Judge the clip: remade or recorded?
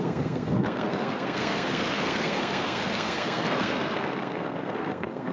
remade